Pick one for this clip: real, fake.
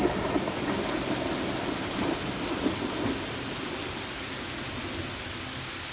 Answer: real